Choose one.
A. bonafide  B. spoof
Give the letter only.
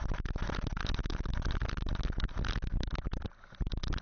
A